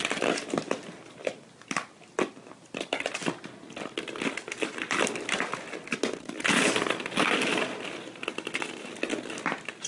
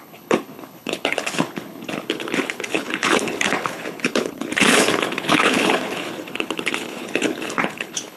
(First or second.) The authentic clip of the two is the first